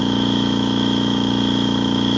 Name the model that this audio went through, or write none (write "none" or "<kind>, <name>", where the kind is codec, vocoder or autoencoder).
autoencoder, DAC-VAE